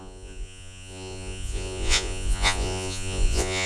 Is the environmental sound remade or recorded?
remade